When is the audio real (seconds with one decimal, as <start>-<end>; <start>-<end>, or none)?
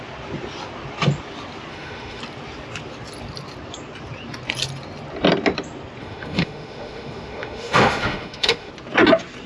0.0-1.7; 2.2-6.0; 8.7-9.5